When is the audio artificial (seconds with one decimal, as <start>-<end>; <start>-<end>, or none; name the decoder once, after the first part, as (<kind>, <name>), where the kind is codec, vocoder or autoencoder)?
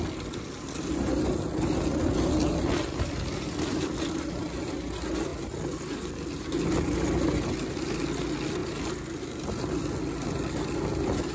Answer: none